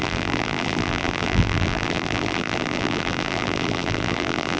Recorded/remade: remade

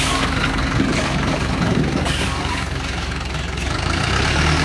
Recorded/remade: remade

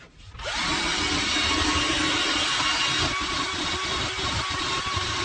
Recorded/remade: recorded